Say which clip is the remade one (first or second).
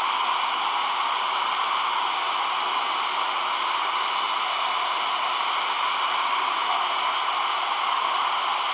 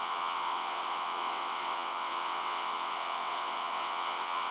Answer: second